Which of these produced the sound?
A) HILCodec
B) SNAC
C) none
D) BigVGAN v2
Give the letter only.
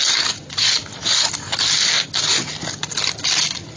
C